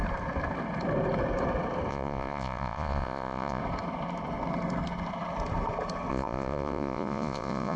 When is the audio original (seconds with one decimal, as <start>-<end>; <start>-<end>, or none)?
0.0-1.9; 3.6-6.1

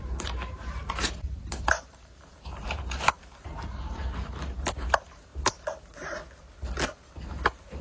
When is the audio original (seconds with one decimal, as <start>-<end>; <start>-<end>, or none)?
5.3-5.8; 6.2-7.0

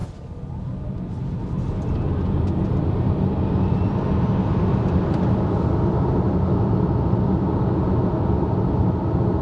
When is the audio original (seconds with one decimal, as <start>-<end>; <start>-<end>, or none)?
0.0-4.7; 6.9-9.4